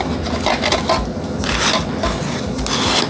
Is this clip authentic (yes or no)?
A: yes